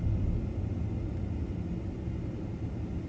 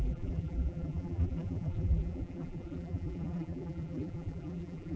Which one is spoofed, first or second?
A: second